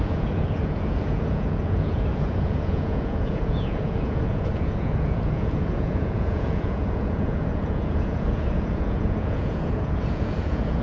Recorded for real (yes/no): no